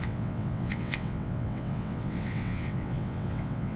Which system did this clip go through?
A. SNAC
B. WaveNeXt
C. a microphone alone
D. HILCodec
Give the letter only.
B